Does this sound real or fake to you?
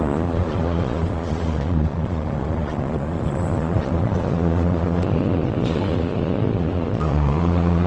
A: fake